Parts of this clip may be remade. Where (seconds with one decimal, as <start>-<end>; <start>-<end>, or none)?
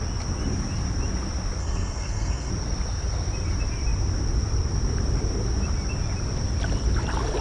1.6-2.5